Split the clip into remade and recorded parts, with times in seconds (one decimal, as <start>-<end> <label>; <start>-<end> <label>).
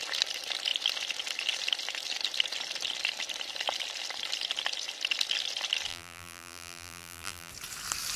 0.0-5.9 recorded; 5.9-7.5 remade; 7.5-8.2 recorded